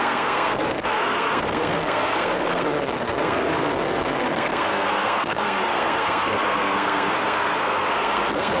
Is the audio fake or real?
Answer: fake